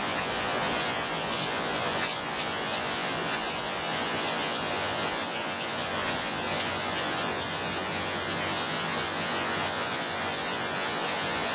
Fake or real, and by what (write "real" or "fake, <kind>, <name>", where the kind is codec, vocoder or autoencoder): fake, vocoder, Vocos